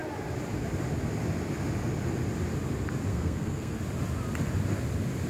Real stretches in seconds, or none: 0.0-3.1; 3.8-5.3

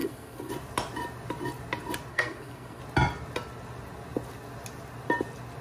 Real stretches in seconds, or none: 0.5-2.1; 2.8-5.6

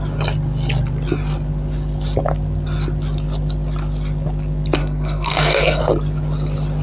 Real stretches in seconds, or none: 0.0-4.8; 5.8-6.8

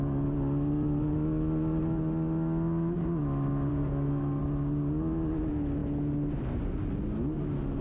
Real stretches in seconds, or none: 0.0-3.7; 4.4-7.8

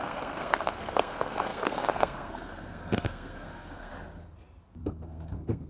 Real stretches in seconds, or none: 3.9-4.8

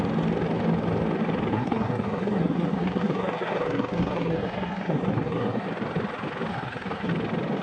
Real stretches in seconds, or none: 0.0-1.5; 5.7-6.5; 7.1-7.6

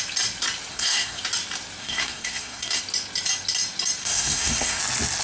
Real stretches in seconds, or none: 0.0-0.7; 1.2-1.8; 2.8-4.0; 4.8-5.2

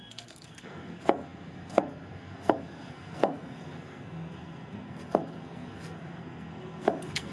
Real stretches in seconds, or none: none